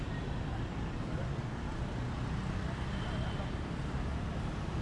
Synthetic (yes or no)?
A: no